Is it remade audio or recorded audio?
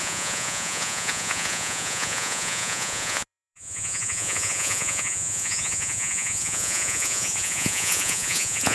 remade